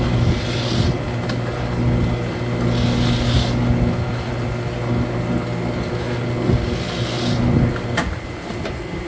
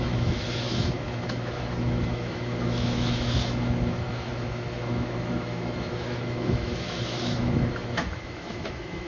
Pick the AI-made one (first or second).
second